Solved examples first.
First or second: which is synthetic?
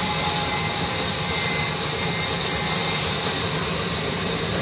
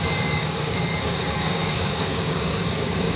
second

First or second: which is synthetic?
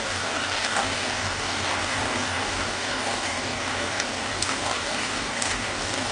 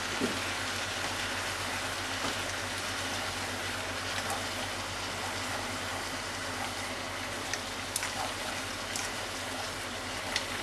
first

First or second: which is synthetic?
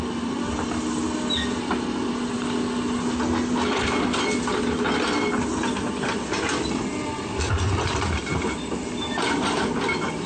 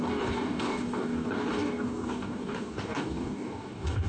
second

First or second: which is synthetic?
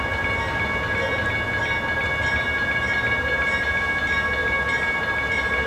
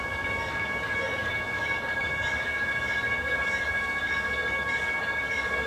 second